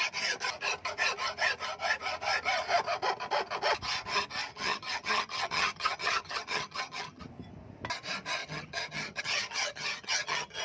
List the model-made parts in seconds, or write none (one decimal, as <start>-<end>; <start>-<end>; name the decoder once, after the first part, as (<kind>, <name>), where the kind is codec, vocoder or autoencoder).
4.5-7.2 (vocoder, HiFi-GAN); 8.4-10.6